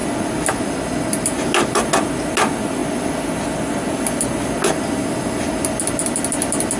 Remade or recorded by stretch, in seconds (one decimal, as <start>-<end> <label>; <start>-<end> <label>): 0.0-6.8 recorded